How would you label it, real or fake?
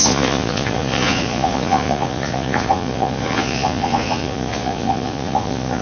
fake